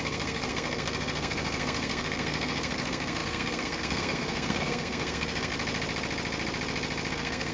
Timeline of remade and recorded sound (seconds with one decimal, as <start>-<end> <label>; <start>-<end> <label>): 0.0-5.5 remade; 5.5-7.1 recorded; 7.1-7.5 remade